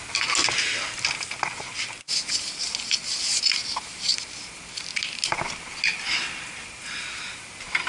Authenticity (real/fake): real